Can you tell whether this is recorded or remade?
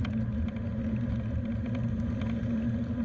recorded